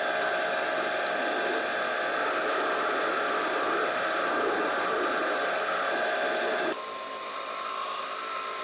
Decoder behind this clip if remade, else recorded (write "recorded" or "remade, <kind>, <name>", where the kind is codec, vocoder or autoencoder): recorded